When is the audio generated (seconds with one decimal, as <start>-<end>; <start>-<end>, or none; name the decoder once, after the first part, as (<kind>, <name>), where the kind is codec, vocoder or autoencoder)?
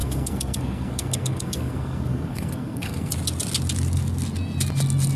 0.0-3.1 (codec, SNAC)